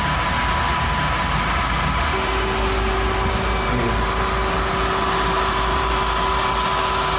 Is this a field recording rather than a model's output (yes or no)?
yes